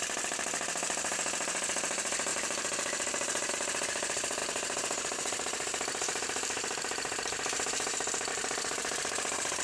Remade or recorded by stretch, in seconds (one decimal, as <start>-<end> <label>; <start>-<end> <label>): 0.0-9.6 remade